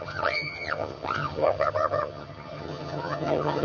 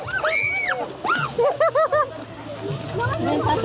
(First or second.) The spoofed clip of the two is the first